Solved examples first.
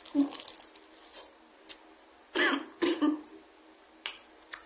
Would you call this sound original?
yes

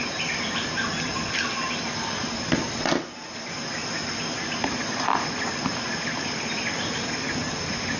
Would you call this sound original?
yes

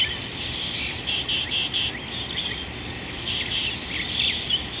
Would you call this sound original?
yes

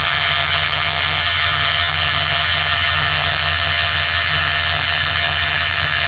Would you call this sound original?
no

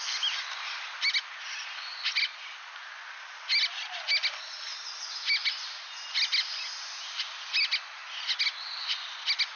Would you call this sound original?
yes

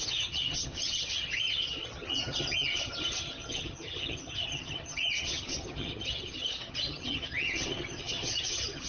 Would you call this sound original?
no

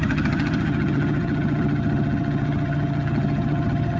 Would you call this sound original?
no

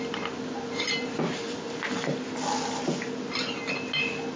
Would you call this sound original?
yes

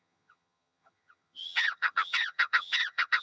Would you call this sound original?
no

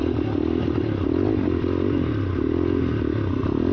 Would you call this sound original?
yes